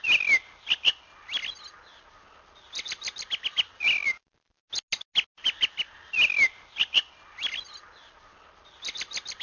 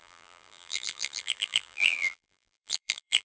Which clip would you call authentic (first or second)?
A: first